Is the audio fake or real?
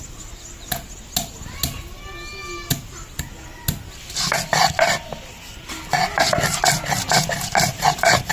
real